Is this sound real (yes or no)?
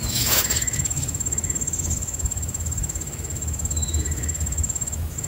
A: no